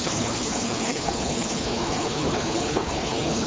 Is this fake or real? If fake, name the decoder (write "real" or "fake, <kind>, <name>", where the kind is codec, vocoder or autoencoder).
fake, codec, HILCodec